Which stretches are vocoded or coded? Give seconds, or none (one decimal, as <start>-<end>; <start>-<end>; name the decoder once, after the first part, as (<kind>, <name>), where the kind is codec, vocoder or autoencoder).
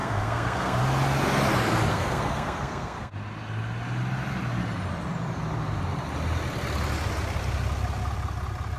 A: 0.0-0.8 (codec, SNAC); 1.9-3.1